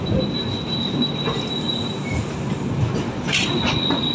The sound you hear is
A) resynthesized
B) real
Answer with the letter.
B